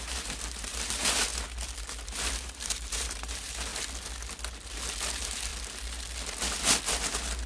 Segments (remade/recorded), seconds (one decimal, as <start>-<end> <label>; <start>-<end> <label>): 0.0-1.3 remade; 1.3-2.4 recorded; 2.4-3.7 remade; 3.7-5.1 recorded; 5.1-5.5 remade; 5.5-7.5 recorded